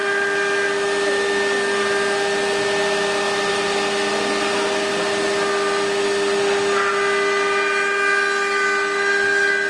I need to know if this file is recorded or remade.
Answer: recorded